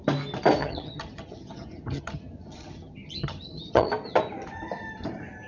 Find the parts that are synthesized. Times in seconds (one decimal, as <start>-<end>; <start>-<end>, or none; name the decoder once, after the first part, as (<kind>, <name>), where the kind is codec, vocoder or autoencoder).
0.6-3.9 (vocoder, HiFi-GAN)